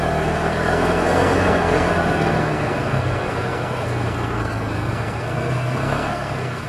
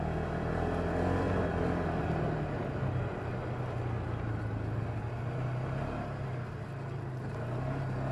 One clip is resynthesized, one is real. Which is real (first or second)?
second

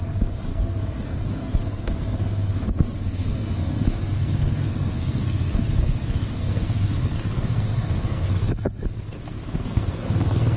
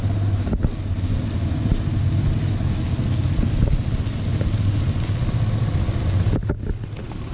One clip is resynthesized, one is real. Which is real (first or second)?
second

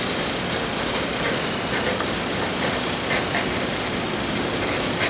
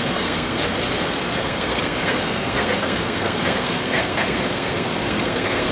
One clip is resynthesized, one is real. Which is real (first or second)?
first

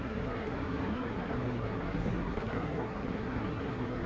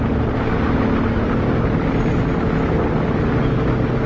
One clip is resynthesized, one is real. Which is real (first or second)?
second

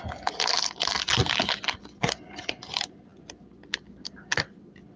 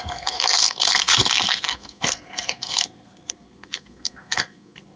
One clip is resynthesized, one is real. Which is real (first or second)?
first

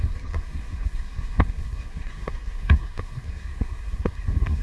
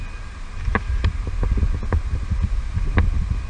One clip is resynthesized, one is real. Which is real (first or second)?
second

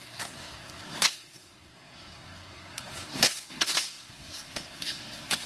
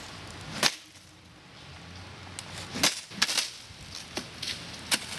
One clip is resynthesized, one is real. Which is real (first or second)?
second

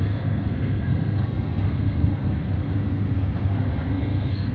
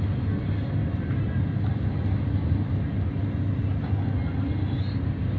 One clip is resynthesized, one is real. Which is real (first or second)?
second